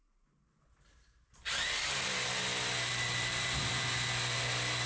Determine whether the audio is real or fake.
real